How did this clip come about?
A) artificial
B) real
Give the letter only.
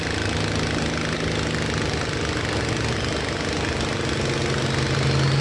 B